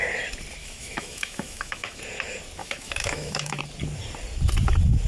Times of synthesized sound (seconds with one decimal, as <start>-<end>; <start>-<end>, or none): 0.6-2.0; 2.6-3.6